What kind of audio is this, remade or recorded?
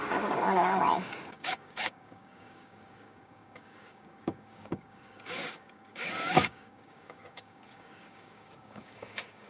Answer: remade